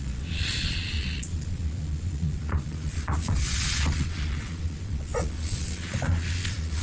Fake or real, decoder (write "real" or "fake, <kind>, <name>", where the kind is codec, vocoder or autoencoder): fake, vocoder, Vocos